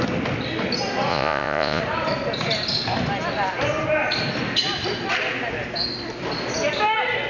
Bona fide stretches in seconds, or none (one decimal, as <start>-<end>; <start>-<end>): 0.0-1.1; 1.8-7.3